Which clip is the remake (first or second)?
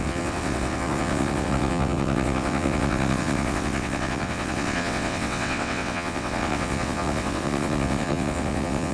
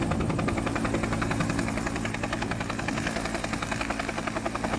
first